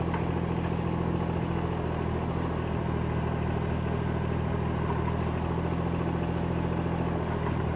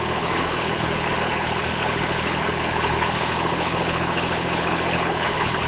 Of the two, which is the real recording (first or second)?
first